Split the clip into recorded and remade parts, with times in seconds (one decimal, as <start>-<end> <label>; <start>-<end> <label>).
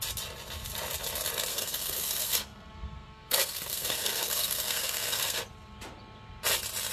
0.0-1.5 recorded; 1.5-5.4 remade; 5.4-6.9 recorded